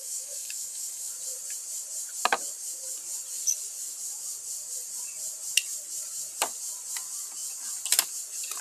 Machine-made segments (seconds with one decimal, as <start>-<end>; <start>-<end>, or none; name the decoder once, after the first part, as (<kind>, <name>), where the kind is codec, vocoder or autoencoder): 0.0-1.1 (codec, DAC)